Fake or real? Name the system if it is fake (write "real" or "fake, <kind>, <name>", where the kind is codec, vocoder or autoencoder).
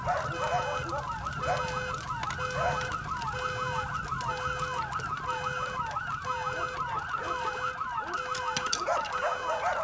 real